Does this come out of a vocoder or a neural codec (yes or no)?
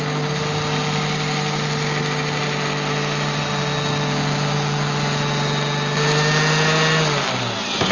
no